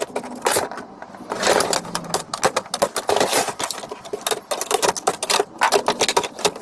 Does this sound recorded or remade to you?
recorded